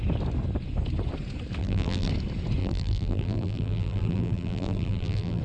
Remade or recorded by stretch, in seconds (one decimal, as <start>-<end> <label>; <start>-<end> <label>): 0.0-1.6 recorded; 1.6-2.1 remade; 2.1-2.6 recorded; 2.6-5.4 remade